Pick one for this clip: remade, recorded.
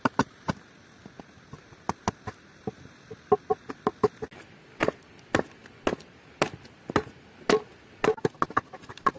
recorded